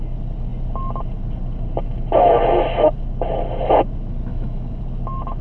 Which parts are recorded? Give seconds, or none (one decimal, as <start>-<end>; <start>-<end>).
0.0-4.3; 4.8-5.4